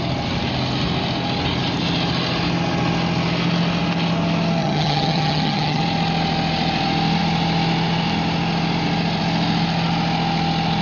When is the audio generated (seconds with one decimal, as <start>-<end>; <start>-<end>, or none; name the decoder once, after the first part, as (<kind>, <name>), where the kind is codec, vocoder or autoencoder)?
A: 4.6-5.8 (vocoder, HiFi-GAN)